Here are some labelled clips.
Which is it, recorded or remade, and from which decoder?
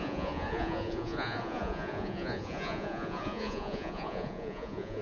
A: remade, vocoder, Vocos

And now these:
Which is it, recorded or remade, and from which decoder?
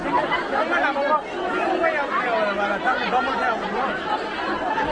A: recorded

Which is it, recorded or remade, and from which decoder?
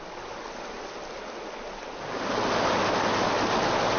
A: recorded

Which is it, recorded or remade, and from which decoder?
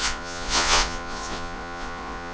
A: remade, vocoder, Vocos